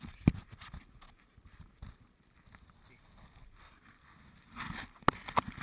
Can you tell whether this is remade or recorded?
recorded